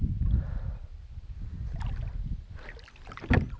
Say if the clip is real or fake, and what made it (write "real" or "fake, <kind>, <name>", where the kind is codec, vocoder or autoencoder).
real